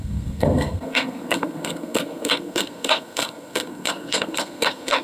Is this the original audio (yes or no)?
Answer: no